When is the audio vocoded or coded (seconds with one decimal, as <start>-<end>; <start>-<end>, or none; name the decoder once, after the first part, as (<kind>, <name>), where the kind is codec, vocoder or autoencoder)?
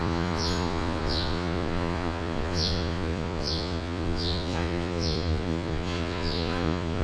0.0-7.0 (vocoder, Vocos)